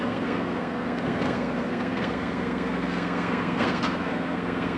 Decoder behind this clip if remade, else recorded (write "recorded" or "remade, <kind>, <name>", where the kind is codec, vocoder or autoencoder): remade, codec, SNAC